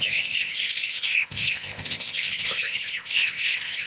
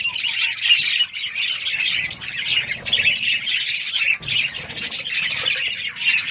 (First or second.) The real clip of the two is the second